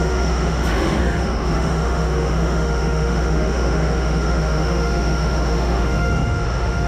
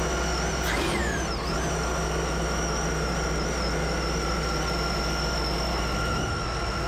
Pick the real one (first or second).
second